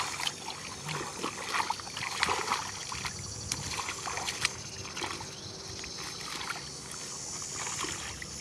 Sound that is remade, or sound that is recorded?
recorded